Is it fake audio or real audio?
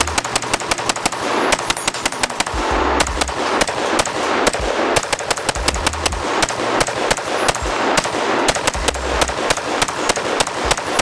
real